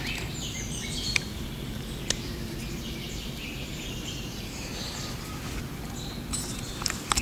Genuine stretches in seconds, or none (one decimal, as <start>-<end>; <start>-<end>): 4.7-6.3